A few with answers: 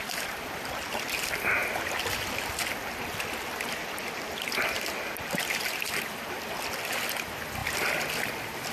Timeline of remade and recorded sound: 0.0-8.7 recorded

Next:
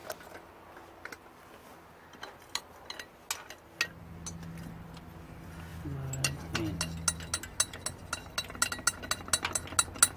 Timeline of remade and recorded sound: 0.0-10.2 recorded

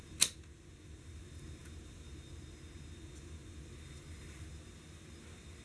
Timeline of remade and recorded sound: 0.0-5.6 recorded

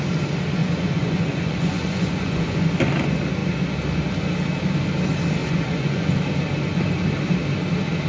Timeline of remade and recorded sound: 0.0-0.6 recorded; 0.6-2.7 remade; 2.7-5.4 recorded; 5.4-6.2 remade; 6.2-8.1 recorded

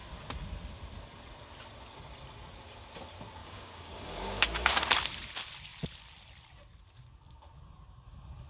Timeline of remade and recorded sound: 0.0-3.4 recorded; 3.4-4.7 remade; 4.7-8.5 recorded

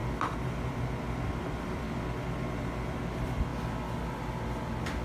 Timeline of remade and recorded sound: 0.0-1.9 remade; 1.9-5.0 recorded